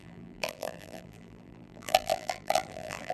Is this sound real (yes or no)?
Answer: no